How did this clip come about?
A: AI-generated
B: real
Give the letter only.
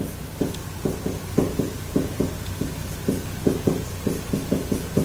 B